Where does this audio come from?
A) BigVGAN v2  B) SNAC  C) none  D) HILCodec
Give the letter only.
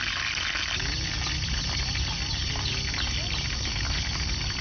C